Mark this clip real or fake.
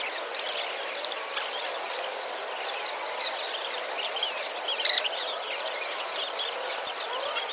real